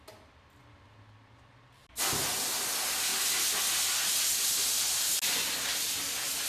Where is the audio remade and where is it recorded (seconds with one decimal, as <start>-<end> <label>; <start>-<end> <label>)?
0.0-6.5 recorded